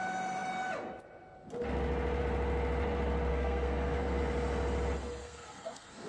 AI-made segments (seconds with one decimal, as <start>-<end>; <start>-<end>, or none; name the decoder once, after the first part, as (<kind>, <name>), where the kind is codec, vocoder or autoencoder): 3.3-4.2 (codec, SNAC); 5.2-6.1